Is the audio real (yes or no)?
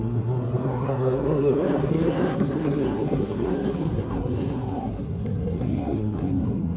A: no